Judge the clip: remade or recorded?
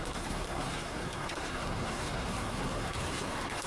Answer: remade